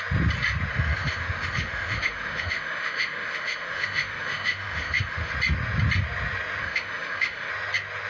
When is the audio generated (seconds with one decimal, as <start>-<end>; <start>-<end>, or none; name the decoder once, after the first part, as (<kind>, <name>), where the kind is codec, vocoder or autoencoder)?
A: 0.7-5.3 (autoencoder, DAC-VAE); 6.6-7.5